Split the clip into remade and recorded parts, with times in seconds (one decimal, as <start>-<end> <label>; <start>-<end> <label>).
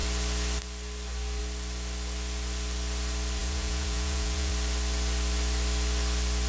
0.0-3.4 recorded; 3.4-4.5 remade; 4.5-6.5 recorded